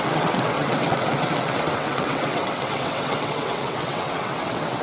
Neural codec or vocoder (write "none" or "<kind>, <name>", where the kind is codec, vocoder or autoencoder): vocoder, WaveNeXt